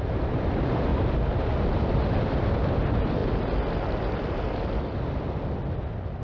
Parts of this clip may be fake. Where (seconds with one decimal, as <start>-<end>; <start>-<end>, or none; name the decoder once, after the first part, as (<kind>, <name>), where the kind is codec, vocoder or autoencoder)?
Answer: 0.0-3.2 (vocoder, BigVGAN v2)